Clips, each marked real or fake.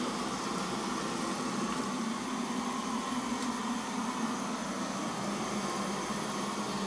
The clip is real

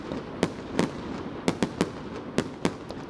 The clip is real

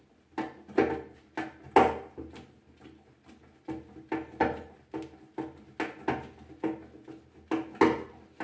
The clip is real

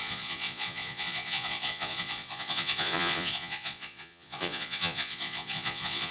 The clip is fake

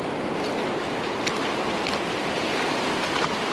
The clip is real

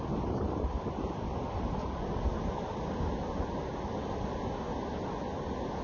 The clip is real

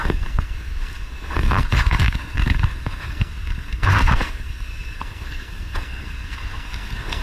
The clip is fake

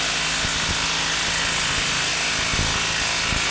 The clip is real